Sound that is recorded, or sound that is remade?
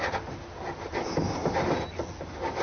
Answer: recorded